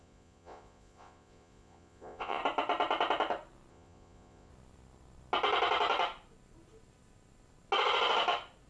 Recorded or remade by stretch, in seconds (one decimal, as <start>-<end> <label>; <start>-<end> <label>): 0.0-2.4 remade; 2.4-3.7 recorded; 3.7-4.5 remade; 4.5-8.7 recorded